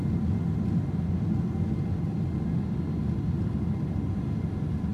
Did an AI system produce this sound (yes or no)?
no